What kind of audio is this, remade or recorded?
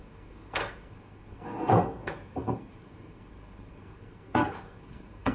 remade